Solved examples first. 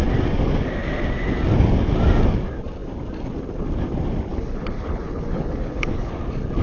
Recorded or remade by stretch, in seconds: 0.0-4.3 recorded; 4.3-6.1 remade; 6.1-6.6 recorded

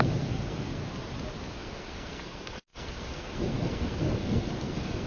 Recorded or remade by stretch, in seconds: 0.0-0.8 remade; 0.8-1.6 recorded; 1.6-5.1 remade

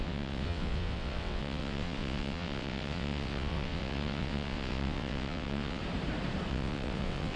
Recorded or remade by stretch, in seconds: 0.0-5.8 remade; 5.8-6.5 recorded; 6.5-7.4 remade